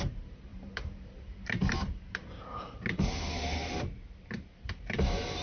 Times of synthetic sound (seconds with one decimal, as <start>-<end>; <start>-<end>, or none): 0.0-3.6; 4.3-5.4